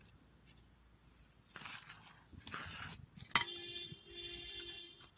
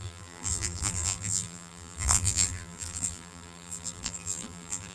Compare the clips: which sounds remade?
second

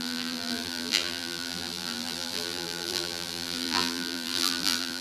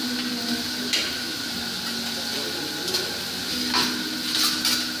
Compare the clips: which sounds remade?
first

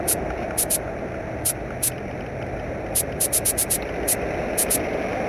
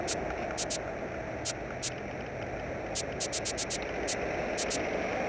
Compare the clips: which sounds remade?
first